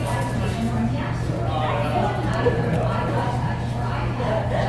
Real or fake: real